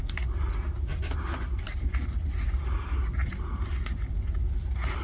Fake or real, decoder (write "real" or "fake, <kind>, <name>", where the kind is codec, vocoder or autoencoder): real